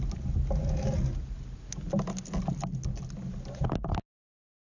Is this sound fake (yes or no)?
no